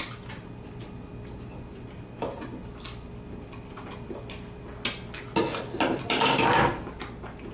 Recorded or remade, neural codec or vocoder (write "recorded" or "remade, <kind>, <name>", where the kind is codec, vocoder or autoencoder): recorded